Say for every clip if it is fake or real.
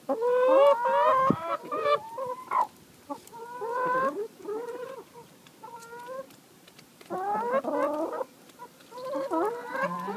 real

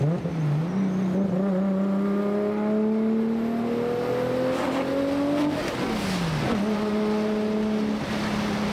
real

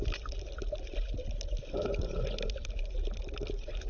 real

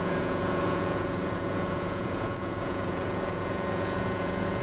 fake